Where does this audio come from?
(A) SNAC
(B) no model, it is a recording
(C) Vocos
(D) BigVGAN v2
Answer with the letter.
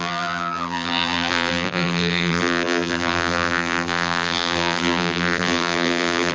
D